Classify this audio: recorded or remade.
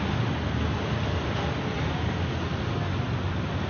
recorded